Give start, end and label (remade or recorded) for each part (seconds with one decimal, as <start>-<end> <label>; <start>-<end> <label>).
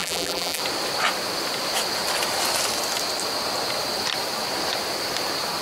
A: 0.0-0.6 remade; 0.6-5.6 recorded